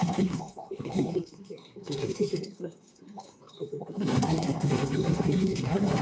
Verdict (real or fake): fake